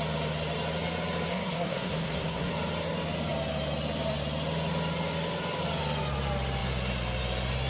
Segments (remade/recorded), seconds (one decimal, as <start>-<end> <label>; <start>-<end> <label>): 0.0-1.3 recorded; 1.3-2.5 remade; 2.5-7.7 recorded